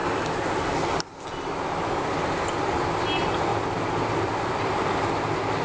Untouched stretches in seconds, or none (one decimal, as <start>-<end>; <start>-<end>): 0.0-5.6